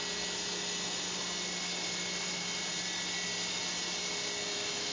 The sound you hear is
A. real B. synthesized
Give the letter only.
A